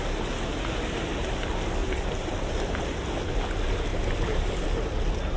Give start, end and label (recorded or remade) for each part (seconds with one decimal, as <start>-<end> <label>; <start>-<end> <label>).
0.0-1.8 recorded; 1.8-2.8 remade; 2.8-3.9 recorded; 3.9-4.5 remade; 4.5-5.4 recorded